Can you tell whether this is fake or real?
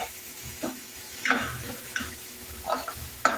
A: fake